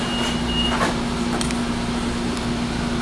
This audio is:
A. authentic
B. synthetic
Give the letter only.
A